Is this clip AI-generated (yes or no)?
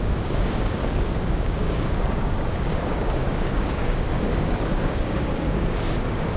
yes